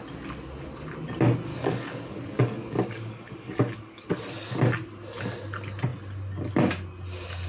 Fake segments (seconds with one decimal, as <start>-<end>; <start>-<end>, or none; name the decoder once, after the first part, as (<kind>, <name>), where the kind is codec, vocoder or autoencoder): 1.5-4.1 (codec, DAC)